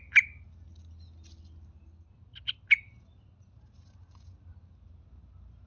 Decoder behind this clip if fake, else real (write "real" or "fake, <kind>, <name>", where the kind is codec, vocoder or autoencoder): real